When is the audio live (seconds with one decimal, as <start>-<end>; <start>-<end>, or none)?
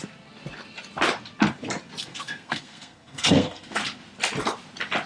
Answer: 0.0-2.0; 3.8-5.1